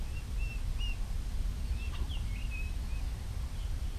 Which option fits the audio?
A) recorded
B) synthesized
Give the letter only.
A